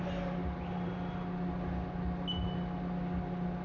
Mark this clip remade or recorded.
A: recorded